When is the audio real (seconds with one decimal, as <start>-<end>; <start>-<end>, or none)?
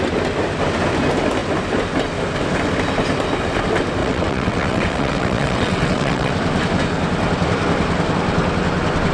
0.0-4.0; 6.3-9.1